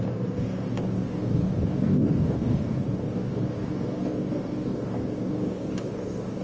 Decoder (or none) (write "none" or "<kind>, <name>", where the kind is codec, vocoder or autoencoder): codec, DAC